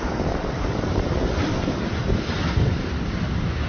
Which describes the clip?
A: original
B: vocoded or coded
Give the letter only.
A